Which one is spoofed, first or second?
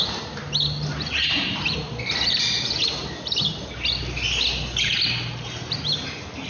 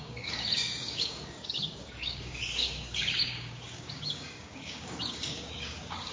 second